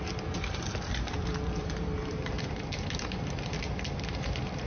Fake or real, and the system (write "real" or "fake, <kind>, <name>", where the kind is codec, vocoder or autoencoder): fake, vocoder, BigVGAN v2